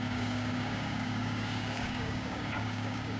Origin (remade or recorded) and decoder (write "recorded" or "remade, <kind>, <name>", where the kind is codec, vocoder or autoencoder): remade, codec, DAC